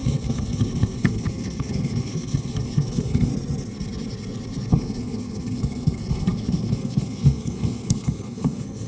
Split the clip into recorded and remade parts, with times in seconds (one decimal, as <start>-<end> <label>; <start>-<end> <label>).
0.0-3.3 remade; 3.3-4.7 recorded; 4.7-8.9 remade